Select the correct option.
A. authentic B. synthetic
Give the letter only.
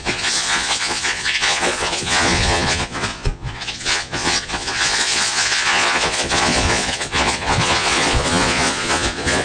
B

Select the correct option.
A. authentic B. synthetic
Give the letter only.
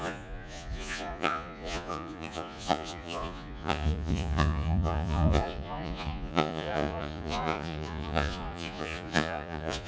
B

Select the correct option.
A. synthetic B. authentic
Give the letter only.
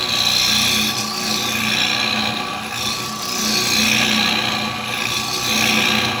B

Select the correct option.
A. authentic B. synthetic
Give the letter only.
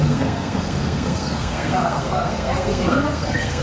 B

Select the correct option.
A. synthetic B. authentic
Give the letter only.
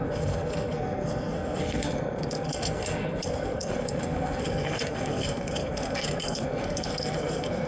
A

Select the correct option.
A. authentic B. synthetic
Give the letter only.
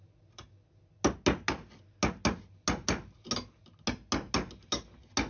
A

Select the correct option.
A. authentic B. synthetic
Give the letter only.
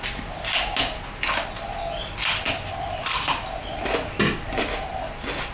A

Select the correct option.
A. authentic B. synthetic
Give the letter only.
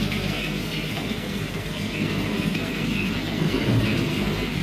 B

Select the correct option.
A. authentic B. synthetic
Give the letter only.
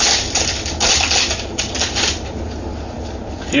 A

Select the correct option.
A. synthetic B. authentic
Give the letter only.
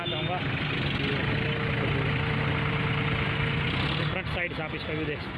B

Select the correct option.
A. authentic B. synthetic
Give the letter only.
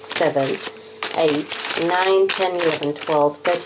A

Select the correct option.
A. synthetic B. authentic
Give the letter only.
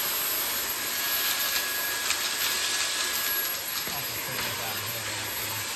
B